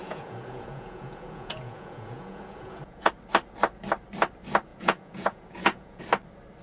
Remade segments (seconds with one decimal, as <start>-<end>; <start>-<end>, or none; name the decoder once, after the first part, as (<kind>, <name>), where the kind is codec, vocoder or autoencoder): 0.0-3.1 (vocoder, Vocos); 4.7-6.0